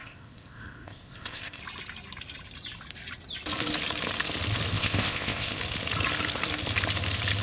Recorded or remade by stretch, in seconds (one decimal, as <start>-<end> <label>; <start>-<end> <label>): 0.0-1.6 remade; 1.6-4.7 recorded; 4.7-5.6 remade; 5.6-7.4 recorded